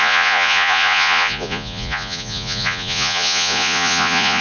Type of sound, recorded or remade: remade